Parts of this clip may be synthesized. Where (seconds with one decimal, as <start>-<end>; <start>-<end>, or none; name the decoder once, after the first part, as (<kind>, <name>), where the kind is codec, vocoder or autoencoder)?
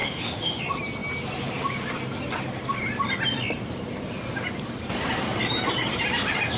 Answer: 0.0-0.6 (autoencoder, DAC-VAE)